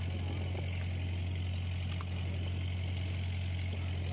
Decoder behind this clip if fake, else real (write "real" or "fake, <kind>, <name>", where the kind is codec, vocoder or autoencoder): real